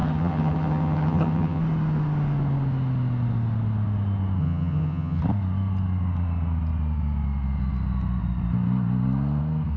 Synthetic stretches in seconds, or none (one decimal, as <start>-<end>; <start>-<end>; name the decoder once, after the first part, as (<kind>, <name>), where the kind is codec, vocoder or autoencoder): 0.0-1.6 (vocoder, HiFi-GAN); 4.4-5.2